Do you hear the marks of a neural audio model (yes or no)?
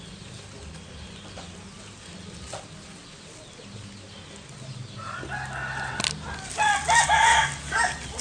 no